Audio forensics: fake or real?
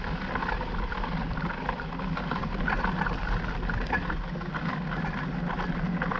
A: real